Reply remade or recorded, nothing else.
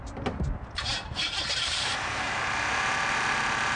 remade